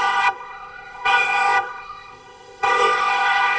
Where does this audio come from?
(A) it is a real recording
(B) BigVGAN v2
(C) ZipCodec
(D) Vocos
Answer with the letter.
C